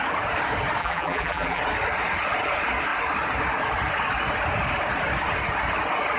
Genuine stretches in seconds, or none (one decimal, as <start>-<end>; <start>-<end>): 0.0-0.8; 1.6-6.2